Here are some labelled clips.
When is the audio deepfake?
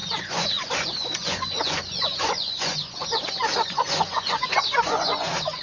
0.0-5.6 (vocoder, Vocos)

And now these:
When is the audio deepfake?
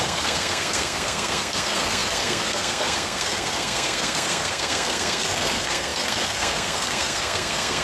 0.0-7.8 (codec, SNAC)